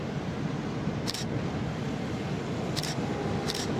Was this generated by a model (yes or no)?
no